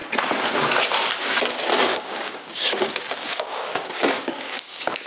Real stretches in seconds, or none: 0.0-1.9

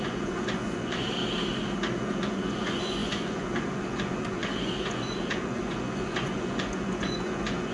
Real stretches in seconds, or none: 1.2-2.0

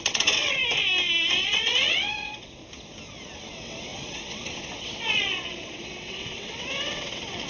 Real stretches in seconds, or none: 0.6-1.3; 2.6-3.4